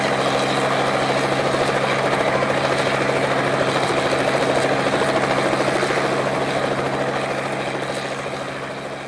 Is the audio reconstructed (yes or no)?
no